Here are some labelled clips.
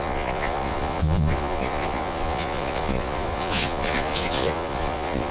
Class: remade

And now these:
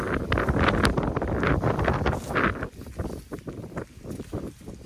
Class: recorded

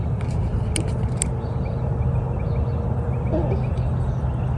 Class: recorded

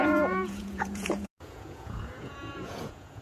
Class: remade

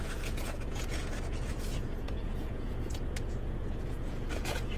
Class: remade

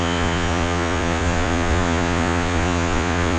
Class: remade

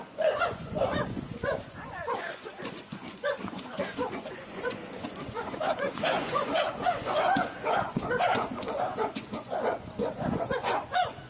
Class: remade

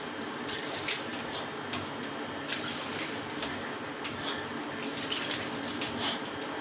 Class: recorded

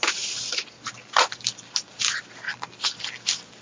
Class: recorded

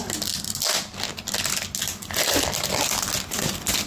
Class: recorded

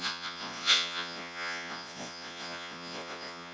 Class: remade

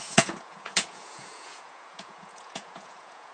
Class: remade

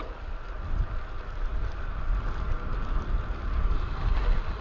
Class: recorded